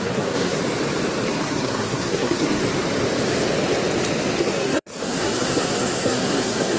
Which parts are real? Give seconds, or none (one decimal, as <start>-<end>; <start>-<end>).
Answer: 0.6-1.3; 2.6-4.4